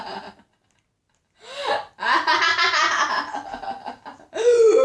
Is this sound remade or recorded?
recorded